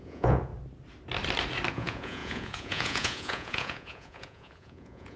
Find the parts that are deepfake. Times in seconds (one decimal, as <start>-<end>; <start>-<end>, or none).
0.0-0.5; 1.7-5.2